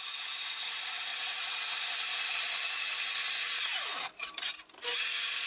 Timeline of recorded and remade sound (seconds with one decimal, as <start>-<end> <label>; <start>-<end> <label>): 0.0-4.2 recorded; 4.2-4.8 remade; 4.8-5.5 recorded